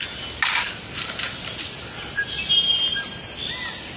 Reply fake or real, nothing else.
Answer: real